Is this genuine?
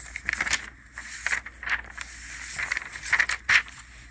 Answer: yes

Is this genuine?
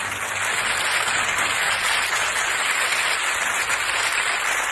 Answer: yes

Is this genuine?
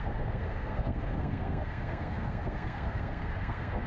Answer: no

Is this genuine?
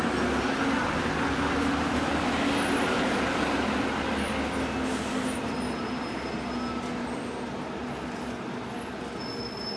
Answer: yes